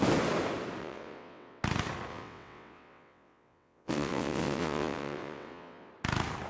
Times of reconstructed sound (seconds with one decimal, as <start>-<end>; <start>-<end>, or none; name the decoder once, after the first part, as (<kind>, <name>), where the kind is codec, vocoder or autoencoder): 0.8-1.6 (vocoder, WaveNeXt); 2.1-5.9